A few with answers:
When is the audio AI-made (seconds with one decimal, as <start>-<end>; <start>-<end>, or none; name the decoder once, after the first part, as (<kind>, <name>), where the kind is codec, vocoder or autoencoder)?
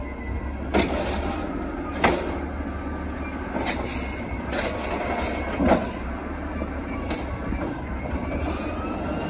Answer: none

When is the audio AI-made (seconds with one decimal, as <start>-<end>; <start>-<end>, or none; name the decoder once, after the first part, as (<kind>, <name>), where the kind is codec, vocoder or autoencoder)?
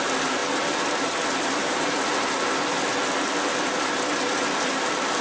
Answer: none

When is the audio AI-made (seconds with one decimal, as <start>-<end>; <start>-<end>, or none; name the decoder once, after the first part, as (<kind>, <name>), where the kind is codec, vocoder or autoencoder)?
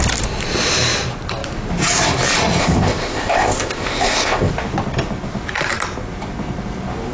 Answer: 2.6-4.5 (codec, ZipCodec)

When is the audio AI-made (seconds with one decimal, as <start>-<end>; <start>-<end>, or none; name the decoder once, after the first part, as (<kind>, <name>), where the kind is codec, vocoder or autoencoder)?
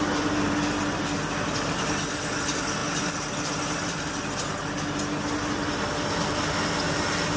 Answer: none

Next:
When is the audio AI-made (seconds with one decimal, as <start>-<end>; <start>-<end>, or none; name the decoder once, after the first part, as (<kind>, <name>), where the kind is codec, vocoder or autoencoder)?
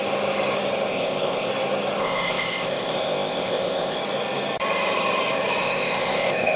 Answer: 0.9-1.5 (codec, ZipCodec); 2.0-4.0; 5.6-6.6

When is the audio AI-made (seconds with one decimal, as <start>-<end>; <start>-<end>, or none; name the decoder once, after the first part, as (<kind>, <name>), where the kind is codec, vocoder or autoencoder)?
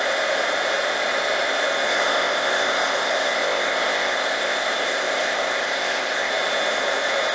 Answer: 1.9-6.3 (codec, ZipCodec)